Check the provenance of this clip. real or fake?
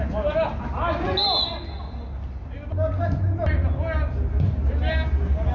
real